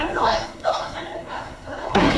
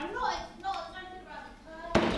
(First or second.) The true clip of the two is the second